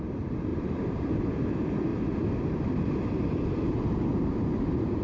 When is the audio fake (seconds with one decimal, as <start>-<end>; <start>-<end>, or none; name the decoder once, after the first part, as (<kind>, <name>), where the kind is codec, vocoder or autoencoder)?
0.5-1.3 (vocoder, BigVGAN v2)